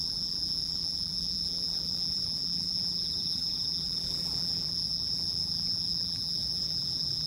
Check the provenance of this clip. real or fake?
fake